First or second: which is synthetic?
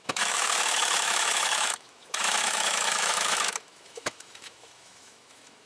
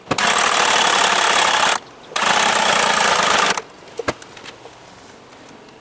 first